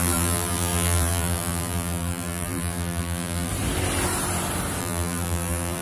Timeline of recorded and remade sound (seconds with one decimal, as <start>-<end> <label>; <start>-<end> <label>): 0.0-3.5 remade; 3.5-4.8 recorded; 4.8-5.8 remade